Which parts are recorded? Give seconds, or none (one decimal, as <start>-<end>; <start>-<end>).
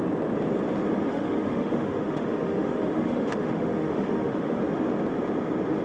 0.0-1.1; 4.6-5.8